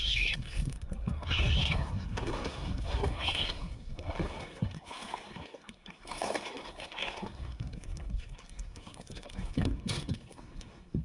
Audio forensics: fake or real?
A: fake